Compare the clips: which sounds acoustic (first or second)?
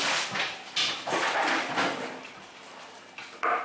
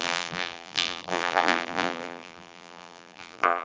first